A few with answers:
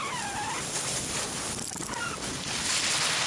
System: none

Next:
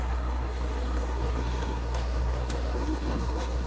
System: codec, SNAC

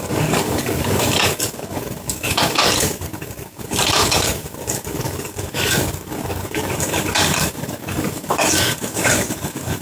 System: codec, DAC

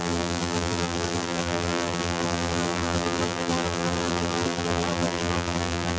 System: vocoder, BigVGAN v2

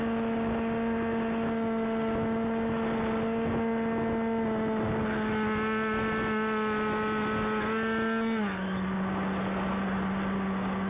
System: none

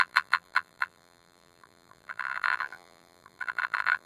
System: vocoder, BigVGAN v2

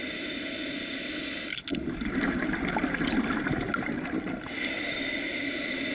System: none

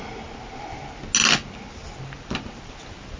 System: none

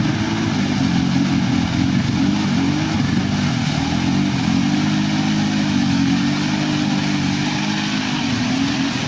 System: none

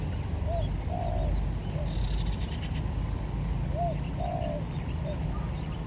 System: none